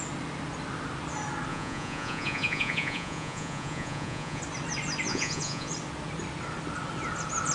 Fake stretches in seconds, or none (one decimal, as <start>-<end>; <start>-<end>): 1.5-4.4; 5.1-5.7